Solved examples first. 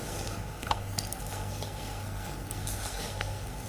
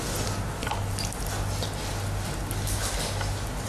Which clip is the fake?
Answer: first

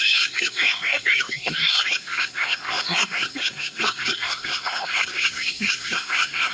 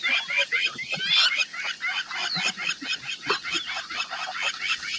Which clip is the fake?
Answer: first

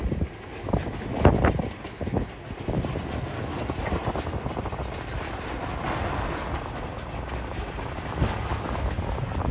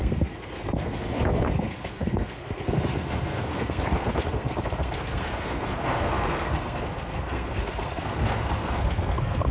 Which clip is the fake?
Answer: second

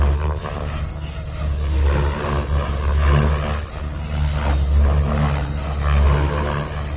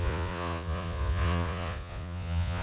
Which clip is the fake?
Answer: second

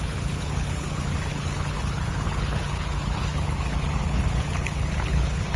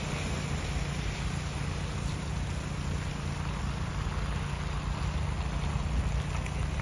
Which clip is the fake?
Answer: first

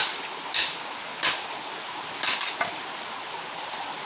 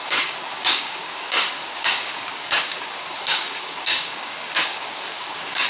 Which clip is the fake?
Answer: second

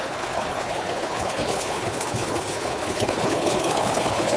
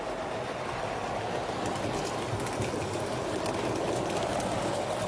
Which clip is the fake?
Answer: first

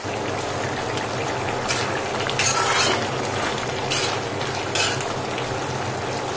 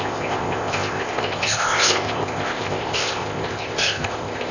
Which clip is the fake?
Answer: second